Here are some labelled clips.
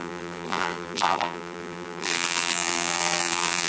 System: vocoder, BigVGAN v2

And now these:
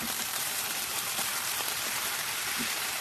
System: vocoder, BigVGAN v2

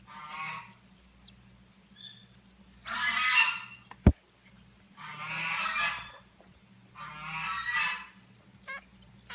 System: none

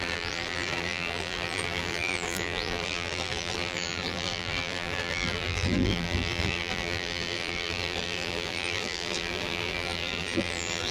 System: vocoder, BigVGAN v2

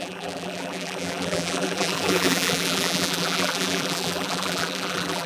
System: vocoder, BigVGAN v2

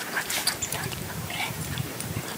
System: vocoder, BigVGAN v2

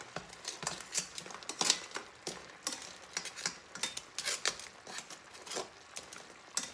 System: none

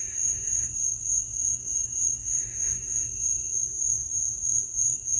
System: none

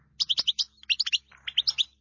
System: none